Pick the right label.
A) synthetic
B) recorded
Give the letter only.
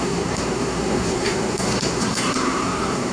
A